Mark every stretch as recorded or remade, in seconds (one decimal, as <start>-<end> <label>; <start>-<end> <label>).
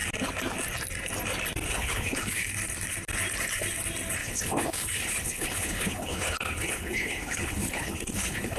0.0-1.7 recorded; 1.7-2.5 remade; 2.5-4.2 recorded; 4.2-8.6 remade